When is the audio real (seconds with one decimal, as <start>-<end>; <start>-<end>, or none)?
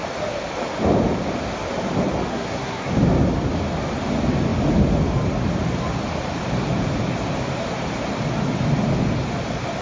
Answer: 0.0-2.3; 2.9-9.8